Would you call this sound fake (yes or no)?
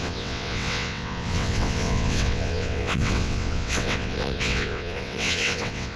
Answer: yes